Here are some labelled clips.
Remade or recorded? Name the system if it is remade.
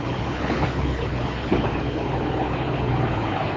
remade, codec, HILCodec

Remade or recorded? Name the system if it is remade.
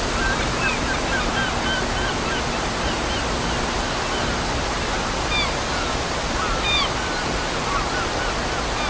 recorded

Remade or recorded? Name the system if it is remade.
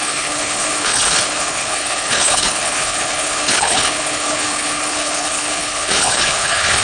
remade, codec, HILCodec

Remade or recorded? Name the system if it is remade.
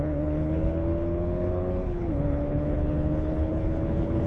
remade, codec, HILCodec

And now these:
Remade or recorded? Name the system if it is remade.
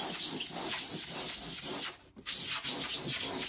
recorded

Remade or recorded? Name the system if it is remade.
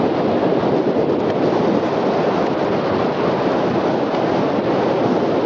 recorded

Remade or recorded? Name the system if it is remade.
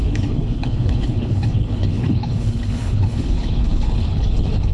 remade, codec, HILCodec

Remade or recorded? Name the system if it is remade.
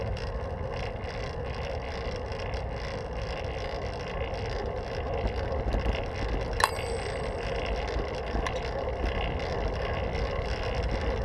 recorded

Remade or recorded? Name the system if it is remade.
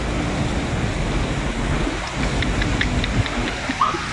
recorded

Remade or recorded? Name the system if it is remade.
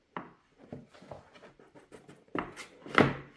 recorded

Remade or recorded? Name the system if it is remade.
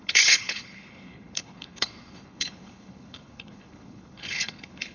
remade, codec, HILCodec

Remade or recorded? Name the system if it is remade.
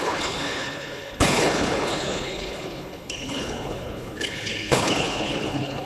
remade, codec, HILCodec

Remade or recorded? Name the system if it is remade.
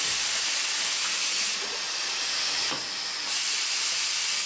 recorded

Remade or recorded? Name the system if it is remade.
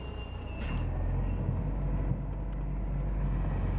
recorded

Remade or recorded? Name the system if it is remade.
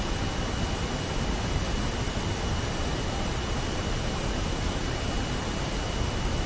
recorded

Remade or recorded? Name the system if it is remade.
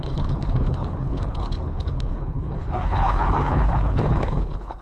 remade, codec, HILCodec